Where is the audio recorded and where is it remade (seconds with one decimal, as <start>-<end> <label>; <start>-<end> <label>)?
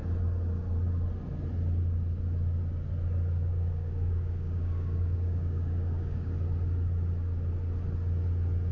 0.0-3.5 recorded; 3.5-6.3 remade; 6.3-8.7 recorded